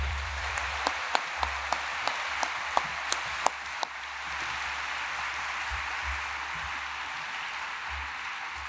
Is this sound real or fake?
fake